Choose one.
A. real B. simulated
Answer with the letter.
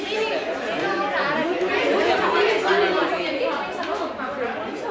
A